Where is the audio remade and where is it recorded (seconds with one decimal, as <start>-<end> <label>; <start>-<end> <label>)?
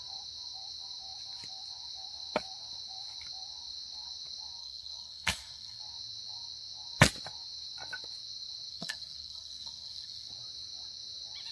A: 0.0-4.6 recorded; 4.6-5.8 remade; 5.8-8.7 recorded; 8.7-10.3 remade; 10.3-11.5 recorded